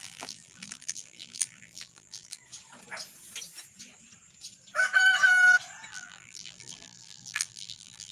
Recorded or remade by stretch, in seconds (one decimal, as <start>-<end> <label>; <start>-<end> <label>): 0.0-2.4 remade; 2.4-5.9 recorded; 5.9-8.1 remade

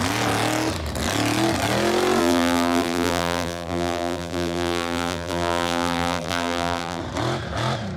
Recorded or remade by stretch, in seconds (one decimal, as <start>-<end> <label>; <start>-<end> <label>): 0.0-2.2 recorded; 2.2-7.0 remade; 7.0-8.0 recorded

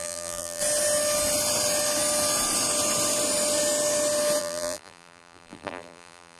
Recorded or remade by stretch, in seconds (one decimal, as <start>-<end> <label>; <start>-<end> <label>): 0.0-0.6 remade; 0.6-4.4 recorded; 4.4-6.4 remade

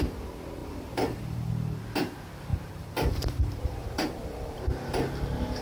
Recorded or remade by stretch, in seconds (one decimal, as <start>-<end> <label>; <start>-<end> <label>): 0.0-0.6 recorded; 0.6-1.5 remade; 1.5-2.5 recorded; 2.5-4.6 remade; 4.6-5.6 recorded